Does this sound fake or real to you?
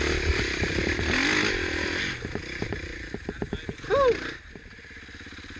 real